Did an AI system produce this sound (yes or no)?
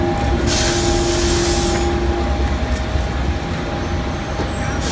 no